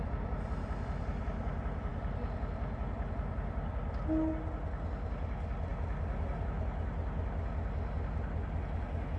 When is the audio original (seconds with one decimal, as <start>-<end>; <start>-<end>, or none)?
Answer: 0.0-9.2